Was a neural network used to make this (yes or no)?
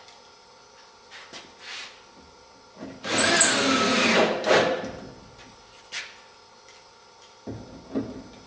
no